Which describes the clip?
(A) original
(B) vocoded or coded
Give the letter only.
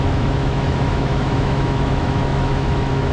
B